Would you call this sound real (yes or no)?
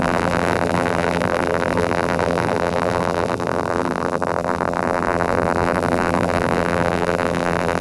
no